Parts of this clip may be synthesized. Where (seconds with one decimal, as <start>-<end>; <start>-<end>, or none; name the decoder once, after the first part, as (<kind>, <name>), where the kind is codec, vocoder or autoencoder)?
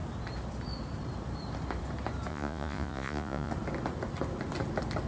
2.3-3.5 (vocoder, Vocos)